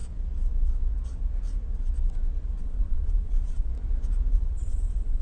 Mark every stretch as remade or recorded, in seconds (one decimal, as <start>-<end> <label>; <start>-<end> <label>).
0.0-2.6 recorded; 2.6-3.7 remade; 3.7-4.3 recorded; 4.3-5.2 remade